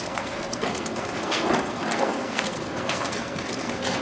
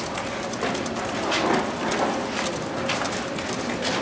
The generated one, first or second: first